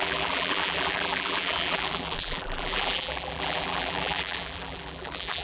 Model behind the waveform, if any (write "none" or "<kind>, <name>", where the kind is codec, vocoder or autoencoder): vocoder, BigVGAN v2